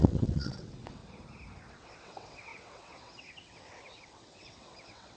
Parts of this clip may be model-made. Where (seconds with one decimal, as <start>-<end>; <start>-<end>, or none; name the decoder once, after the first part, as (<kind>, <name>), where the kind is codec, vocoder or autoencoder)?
0.0-1.0 (vocoder, WaveNeXt); 1.7-5.2